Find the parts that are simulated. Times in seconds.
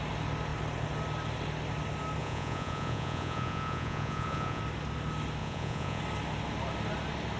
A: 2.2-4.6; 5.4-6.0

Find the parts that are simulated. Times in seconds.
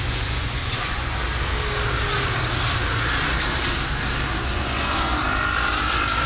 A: 0.0-1.2; 4.4-5.2